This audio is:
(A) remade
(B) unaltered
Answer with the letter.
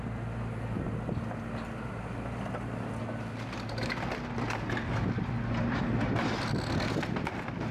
B